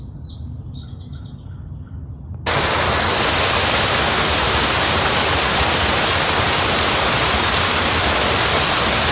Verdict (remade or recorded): recorded